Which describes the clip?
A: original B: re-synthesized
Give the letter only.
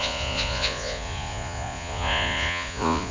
B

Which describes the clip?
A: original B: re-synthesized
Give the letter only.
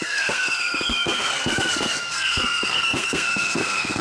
B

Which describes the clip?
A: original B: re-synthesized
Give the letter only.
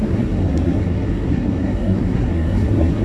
B